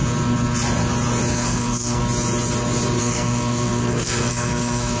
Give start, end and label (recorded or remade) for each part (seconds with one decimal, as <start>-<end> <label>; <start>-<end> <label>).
0.0-1.3 recorded; 1.3-2.0 remade; 2.0-3.0 recorded; 3.0-5.0 remade